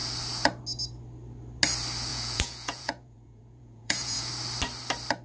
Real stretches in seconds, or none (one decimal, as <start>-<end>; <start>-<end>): 0.0-2.1; 4.3-5.2

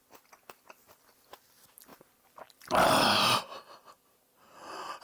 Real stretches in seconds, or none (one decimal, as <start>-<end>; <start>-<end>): 0.0-1.9

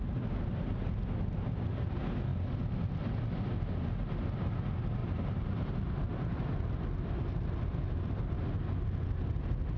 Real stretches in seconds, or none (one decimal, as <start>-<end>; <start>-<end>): 0.0-5.0; 5.7-9.8

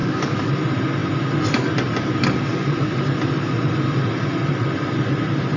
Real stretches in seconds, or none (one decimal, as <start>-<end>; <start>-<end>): 0.5-5.6

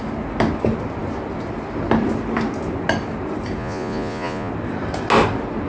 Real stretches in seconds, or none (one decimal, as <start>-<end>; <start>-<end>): 0.0-3.6; 4.5-5.7

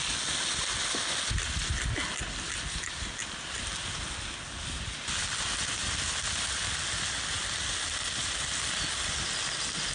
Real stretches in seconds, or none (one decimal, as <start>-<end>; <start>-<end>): 0.0-9.9

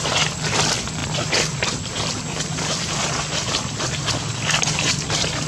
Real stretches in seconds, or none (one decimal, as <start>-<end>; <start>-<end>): 0.0-5.5